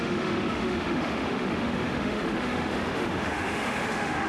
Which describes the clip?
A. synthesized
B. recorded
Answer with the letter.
A